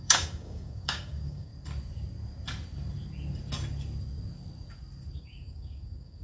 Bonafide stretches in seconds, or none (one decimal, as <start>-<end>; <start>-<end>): 1.5-5.2